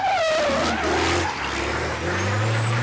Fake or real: real